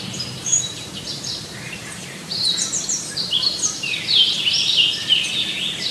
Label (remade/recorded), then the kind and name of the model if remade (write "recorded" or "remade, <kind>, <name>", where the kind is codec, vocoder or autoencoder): remade, vocoder, BigVGAN v2